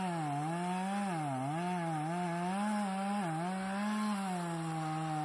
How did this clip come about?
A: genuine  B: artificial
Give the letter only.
A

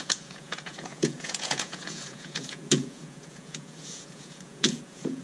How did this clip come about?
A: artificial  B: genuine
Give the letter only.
A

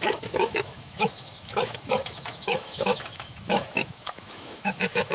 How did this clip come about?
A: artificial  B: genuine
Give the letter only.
A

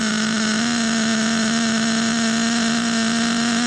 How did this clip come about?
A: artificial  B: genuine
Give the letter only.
B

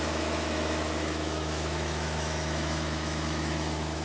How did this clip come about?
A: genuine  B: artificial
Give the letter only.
B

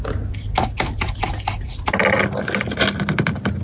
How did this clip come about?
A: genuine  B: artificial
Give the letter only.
A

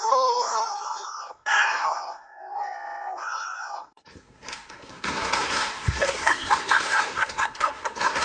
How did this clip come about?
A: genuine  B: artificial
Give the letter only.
B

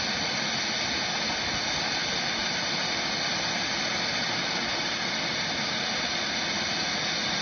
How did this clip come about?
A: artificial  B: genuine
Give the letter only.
B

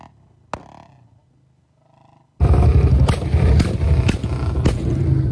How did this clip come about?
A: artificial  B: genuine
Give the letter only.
B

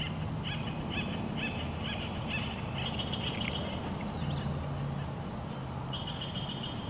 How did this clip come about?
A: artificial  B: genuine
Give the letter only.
B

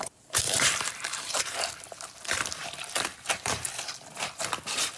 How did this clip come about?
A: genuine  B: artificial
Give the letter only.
B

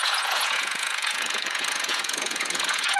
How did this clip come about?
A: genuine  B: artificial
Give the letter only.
B